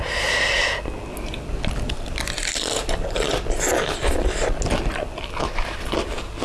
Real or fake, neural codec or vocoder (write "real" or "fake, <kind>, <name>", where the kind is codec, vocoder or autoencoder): real